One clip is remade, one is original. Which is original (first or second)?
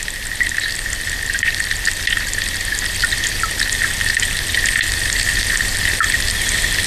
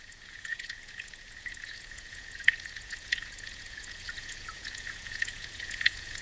first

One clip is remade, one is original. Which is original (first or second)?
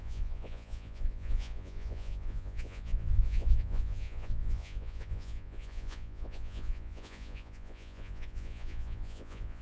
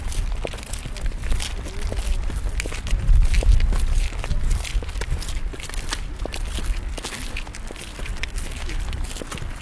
second